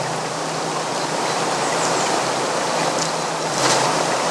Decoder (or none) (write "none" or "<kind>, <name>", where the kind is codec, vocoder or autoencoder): none